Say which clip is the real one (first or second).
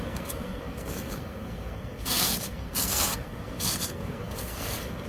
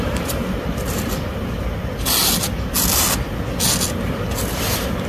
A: second